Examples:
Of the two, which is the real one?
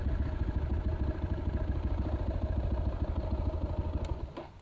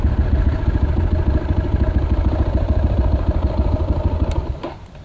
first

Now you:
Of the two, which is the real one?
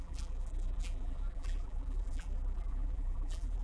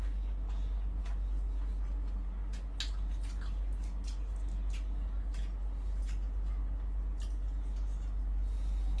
second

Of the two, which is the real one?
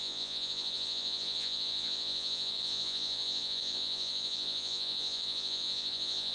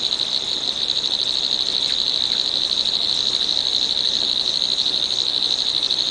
second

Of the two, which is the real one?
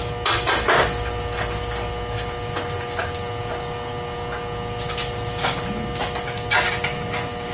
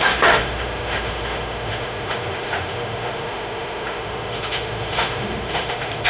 first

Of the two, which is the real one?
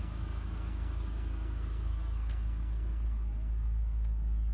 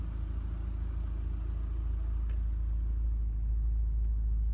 second